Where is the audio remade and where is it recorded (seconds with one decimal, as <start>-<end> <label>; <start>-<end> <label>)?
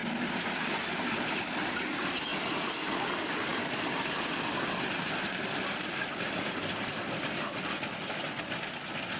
0.0-2.3 recorded; 2.3-3.0 remade; 3.0-3.5 recorded; 3.5-8.2 remade; 8.2-9.2 recorded